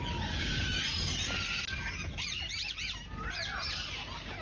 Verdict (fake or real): real